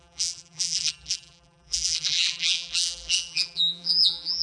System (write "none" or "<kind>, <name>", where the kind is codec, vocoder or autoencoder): vocoder, BigVGAN v2